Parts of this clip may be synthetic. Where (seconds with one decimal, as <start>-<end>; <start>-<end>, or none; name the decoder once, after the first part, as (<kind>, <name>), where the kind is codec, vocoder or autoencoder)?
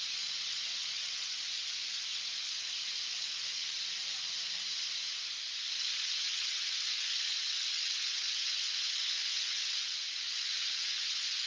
0.0-1.4 (vocoder, WaveNeXt); 3.1-3.6; 5.7-11.5